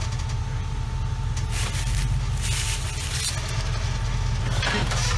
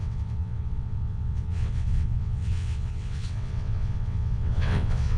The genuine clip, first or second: first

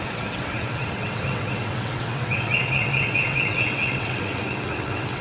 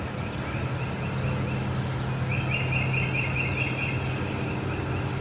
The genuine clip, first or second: second